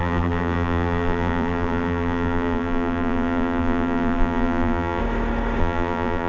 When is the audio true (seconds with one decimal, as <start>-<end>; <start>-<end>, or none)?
5.0-5.6